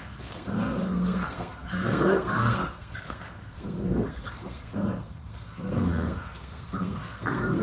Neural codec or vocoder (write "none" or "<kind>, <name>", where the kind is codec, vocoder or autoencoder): codec, SNAC